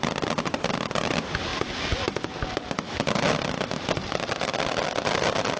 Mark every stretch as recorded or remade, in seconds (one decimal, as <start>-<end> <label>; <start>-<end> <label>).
0.0-5.6 recorded